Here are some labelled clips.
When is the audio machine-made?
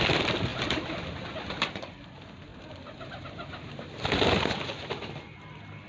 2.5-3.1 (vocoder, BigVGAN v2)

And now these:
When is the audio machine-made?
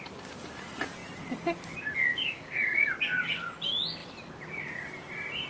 2.1-2.9 (codec, DAC)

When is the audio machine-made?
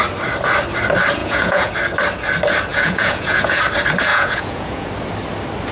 1.2-1.7 (vocoder, Vocos); 2.7-3.6; 4.1-4.9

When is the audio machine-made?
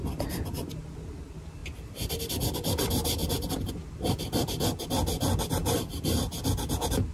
3.2-3.7 (vocoder, BigVGAN v2)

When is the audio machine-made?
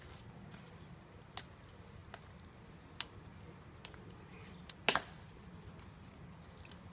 none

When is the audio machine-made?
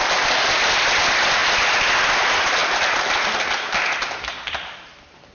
none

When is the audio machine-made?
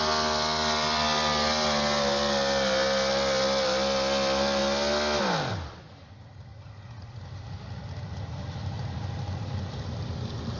6.5-7.2 (vocoder, Vocos)